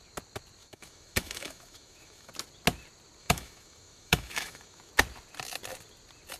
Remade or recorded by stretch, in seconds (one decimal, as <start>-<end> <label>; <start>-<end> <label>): 0.0-0.6 recorded; 0.6-2.3 remade; 2.3-3.2 recorded; 3.2-4.9 remade; 4.9-6.4 recorded